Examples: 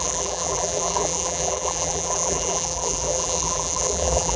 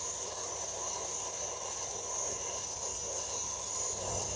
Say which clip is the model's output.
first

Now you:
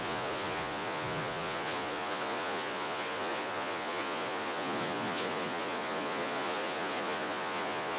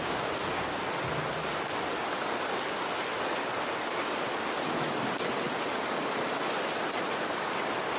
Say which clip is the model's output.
first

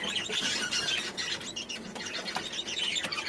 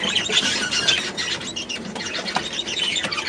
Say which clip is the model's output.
second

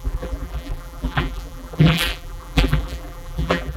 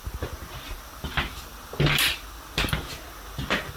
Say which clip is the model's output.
first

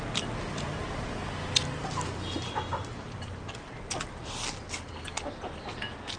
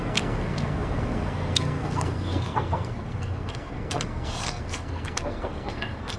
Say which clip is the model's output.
second